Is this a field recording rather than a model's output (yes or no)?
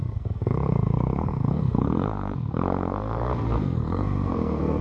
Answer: no